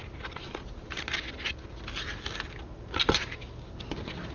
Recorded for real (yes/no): yes